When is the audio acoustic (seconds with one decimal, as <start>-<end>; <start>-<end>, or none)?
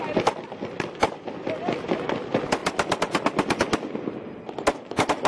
0.0-5.3